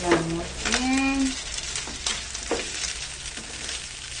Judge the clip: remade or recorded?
recorded